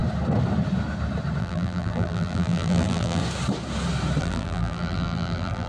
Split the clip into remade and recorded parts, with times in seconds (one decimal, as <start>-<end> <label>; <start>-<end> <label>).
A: 0.0-1.4 recorded; 1.4-3.2 remade; 3.2-4.2 recorded; 4.2-5.7 remade